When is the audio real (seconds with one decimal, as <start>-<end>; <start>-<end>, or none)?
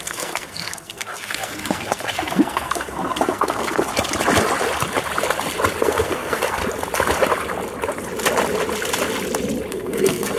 3.9-5.8; 6.6-9.7